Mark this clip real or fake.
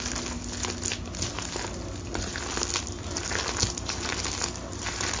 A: real